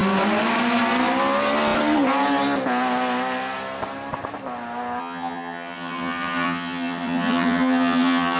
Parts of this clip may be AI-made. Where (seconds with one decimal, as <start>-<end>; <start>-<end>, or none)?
5.0-8.4